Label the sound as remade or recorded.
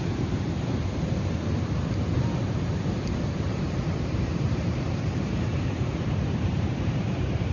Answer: remade